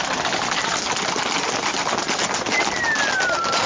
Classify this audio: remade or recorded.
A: recorded